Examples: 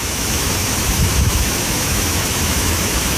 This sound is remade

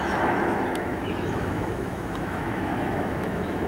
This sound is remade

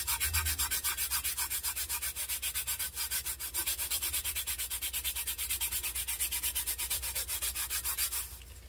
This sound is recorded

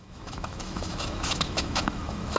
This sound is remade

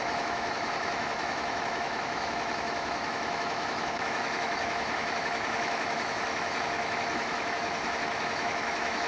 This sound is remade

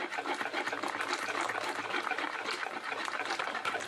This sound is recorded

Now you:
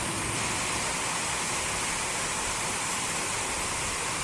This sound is recorded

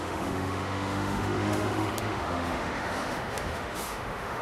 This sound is remade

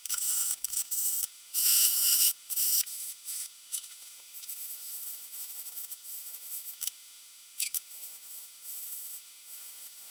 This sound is remade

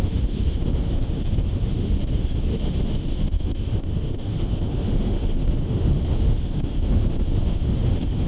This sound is remade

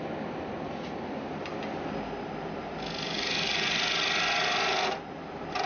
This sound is recorded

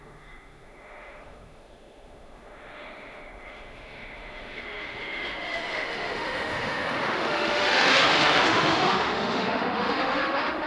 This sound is remade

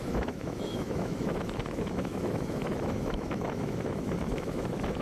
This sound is remade